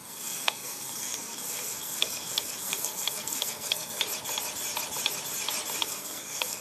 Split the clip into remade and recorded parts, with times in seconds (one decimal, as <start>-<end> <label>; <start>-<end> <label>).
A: 0.0-4.0 remade; 4.0-5.8 recorded; 5.8-6.6 remade